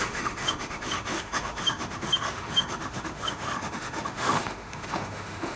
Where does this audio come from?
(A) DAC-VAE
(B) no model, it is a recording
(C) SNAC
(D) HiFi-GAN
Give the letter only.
A